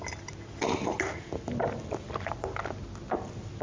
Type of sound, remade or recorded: recorded